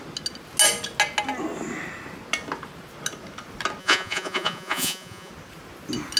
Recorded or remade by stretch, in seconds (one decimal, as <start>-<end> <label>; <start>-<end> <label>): 0.0-3.8 recorded; 3.8-5.3 remade; 5.3-6.2 recorded